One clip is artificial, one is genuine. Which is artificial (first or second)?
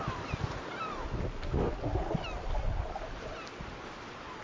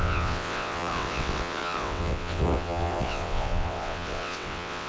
second